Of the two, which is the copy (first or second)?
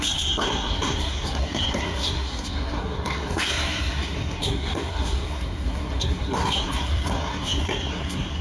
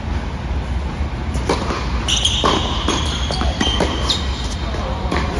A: first